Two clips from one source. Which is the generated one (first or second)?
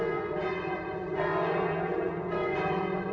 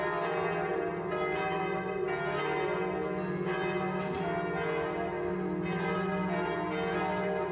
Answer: first